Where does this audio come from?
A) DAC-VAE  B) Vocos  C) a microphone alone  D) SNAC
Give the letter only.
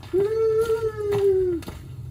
C